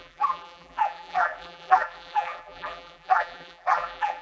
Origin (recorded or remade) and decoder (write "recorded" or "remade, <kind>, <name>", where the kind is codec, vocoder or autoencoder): remade, vocoder, BigVGAN v2